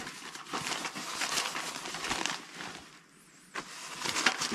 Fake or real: real